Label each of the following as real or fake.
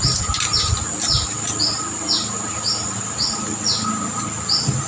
real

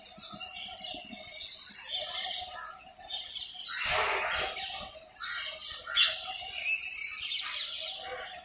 real